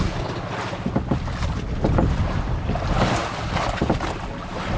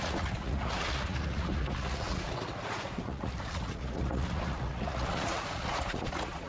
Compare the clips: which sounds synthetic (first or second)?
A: second